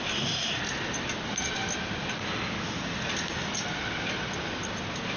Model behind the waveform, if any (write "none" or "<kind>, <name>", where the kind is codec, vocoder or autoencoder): none